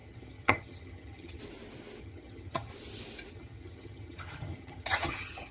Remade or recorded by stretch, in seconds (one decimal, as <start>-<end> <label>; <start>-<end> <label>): 0.0-1.4 remade; 1.4-2.0 recorded; 2.0-2.7 remade; 2.7-3.3 recorded; 3.3-5.5 remade